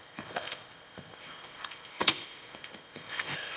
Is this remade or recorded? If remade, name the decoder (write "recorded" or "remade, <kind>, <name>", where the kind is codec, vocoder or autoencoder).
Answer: remade, codec, ZipCodec